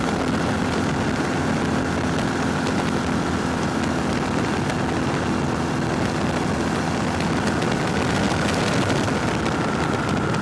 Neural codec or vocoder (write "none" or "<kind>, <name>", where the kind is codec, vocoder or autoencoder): none